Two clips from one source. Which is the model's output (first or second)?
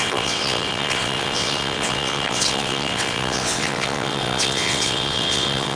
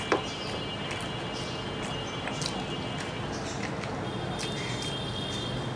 first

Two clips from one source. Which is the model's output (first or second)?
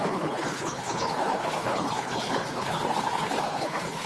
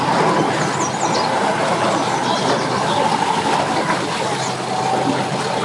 first